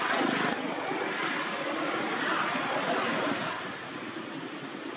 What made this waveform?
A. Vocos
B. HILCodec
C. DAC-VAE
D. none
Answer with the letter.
D